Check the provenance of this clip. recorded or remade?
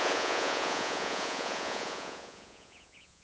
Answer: remade